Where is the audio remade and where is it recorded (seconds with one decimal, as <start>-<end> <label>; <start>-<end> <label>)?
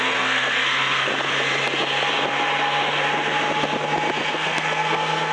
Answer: 0.0-1.1 remade; 1.1-4.3 recorded; 4.3-5.3 remade